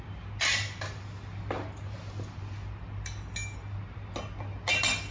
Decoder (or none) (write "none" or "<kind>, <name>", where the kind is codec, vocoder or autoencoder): none